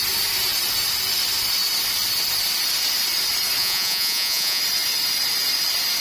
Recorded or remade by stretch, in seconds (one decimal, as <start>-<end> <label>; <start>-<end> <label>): 0.0-3.6 recorded; 3.6-4.6 remade; 4.6-6.0 recorded